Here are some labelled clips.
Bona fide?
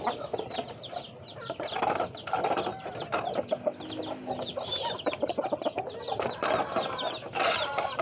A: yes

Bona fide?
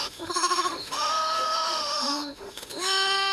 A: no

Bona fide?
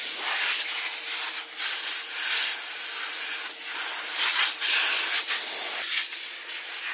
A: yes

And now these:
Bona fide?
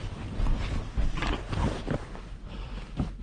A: yes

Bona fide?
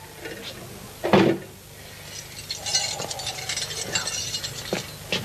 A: yes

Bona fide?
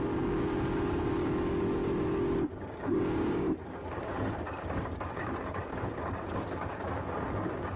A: no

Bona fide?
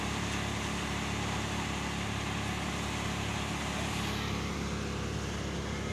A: yes